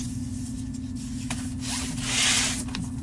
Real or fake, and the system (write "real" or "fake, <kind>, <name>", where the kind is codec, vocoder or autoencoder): real